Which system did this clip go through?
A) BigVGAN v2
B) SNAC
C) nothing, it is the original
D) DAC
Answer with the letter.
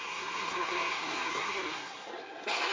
B